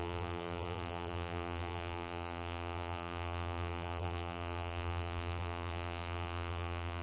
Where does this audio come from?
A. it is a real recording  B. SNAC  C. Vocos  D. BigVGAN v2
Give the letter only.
D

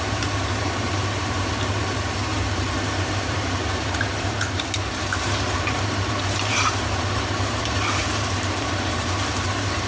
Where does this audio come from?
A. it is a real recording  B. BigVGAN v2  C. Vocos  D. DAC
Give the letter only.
B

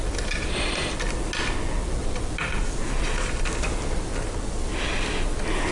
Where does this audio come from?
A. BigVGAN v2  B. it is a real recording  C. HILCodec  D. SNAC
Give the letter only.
B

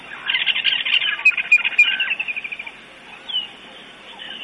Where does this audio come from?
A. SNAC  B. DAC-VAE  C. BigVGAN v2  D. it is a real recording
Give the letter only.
D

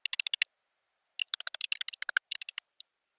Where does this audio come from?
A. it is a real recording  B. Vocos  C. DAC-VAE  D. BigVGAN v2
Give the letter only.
A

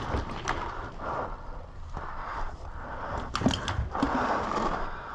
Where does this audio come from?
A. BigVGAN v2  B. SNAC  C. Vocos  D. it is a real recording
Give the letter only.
D